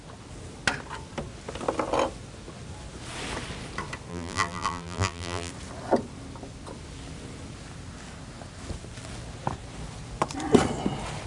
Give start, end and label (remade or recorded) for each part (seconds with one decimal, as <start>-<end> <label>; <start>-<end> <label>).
0.0-4.1 recorded; 4.1-5.5 remade; 5.5-11.3 recorded